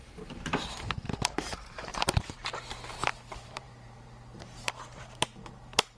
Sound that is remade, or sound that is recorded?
remade